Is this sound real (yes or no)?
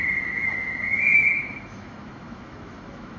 no